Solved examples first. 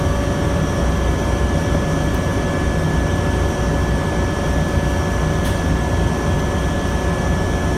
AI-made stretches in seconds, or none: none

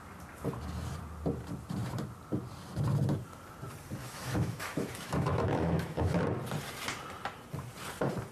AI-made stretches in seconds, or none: 4.0-6.2 (autoencoder, DAC-VAE)